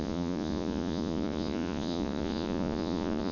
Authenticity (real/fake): fake